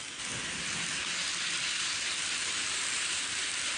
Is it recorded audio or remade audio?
recorded